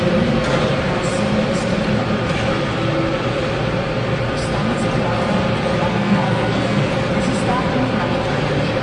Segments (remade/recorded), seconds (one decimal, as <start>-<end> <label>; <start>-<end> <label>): 0.0-5.9 recorded; 5.9-6.9 remade; 6.9-8.8 recorded